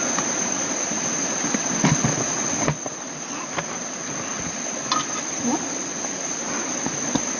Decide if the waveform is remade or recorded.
recorded